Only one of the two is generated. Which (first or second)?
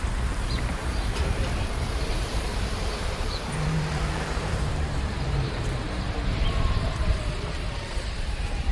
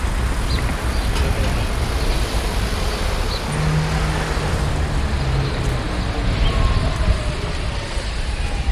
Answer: first